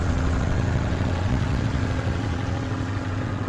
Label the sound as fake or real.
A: fake